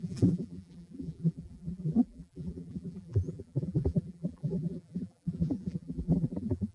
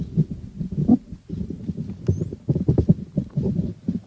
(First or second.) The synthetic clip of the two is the first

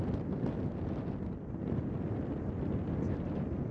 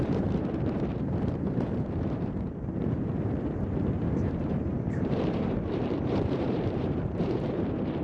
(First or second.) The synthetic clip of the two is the second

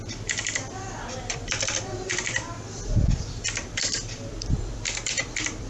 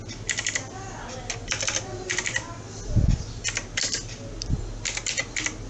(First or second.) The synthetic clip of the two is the first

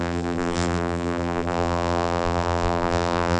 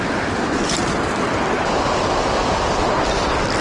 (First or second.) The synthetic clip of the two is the first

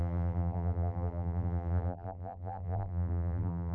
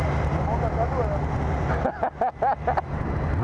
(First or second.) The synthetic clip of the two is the first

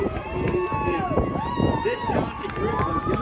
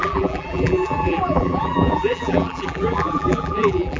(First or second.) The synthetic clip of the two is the second